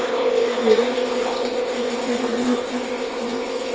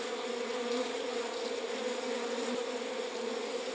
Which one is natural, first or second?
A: second